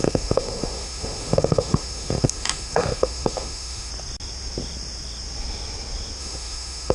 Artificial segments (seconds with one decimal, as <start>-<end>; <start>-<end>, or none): 0.0-3.9; 6.2-6.9